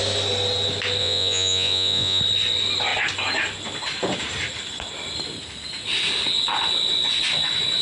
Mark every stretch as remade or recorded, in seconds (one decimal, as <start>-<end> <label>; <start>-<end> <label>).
0.0-1.0 recorded; 1.0-2.2 remade; 2.2-7.8 recorded